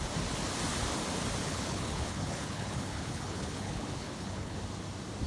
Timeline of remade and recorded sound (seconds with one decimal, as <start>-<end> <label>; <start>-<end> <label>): 0.0-1.4 recorded; 1.4-4.6 remade; 4.6-5.3 recorded